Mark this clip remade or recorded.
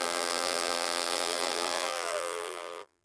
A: remade